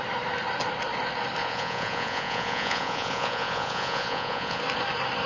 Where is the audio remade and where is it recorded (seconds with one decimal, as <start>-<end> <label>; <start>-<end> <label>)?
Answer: 0.0-1.4 recorded; 1.4-4.6 remade; 4.6-5.3 recorded